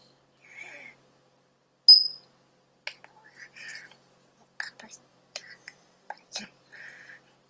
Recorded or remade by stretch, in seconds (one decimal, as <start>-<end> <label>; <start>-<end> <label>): 0.0-5.1 recorded; 5.1-6.4 remade; 6.4-7.5 recorded